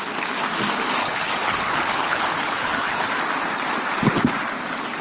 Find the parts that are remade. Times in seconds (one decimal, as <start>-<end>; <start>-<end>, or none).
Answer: 1.0-3.1